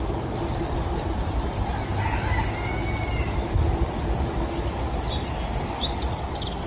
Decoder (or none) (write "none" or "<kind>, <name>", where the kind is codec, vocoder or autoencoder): none